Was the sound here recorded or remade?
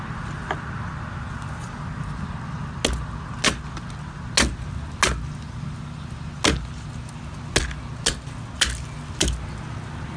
recorded